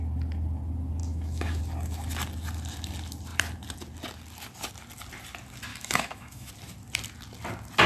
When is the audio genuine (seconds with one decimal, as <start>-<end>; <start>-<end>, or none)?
0.0-1.0; 1.6-5.7; 6.5-7.9